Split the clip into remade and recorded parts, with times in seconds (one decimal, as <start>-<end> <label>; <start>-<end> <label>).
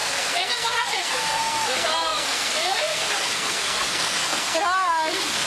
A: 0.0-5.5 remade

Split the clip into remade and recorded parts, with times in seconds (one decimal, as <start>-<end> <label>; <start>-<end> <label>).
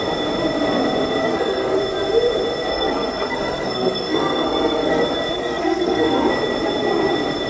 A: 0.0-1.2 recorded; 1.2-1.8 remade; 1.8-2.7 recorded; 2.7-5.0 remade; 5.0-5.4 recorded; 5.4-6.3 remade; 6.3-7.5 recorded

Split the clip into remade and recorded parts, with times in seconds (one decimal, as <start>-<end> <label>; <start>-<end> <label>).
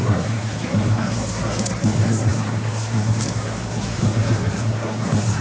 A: 0.0-5.4 remade